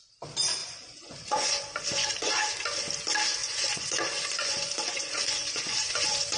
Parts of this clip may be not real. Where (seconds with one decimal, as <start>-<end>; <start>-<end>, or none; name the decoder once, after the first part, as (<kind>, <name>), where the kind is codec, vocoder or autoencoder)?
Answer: 0.6-2.3 (vocoder, Vocos); 3.4-6.4